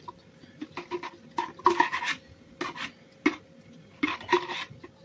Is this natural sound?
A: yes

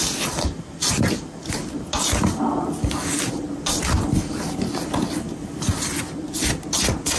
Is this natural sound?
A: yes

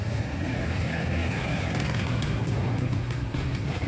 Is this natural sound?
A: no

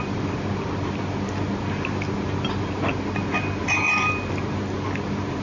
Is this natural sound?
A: yes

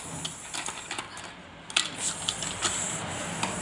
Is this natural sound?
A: yes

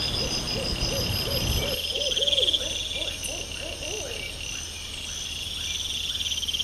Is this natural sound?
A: yes